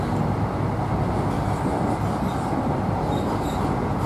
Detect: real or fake real